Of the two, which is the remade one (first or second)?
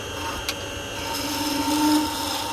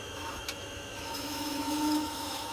second